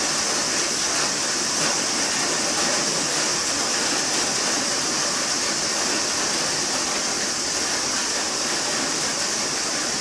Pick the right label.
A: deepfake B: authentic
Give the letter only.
B